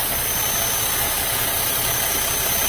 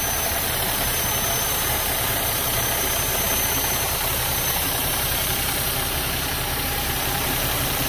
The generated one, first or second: second